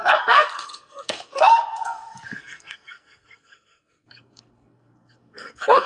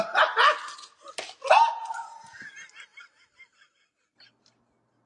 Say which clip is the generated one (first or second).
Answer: first